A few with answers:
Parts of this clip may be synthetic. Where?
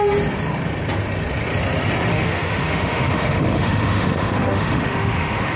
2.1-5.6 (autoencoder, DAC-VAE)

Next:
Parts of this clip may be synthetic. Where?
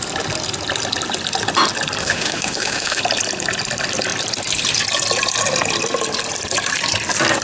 2.0-3.0 (autoencoder, DAC-VAE)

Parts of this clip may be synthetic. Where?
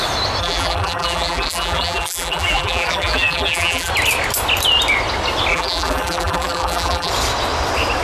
0.4-3.9 (vocoder, BigVGAN v2); 5.5-7.1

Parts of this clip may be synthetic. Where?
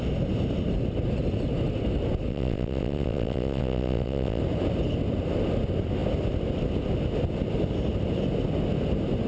2.3-4.4 (vocoder, WaveNeXt)